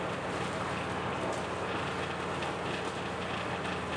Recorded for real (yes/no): yes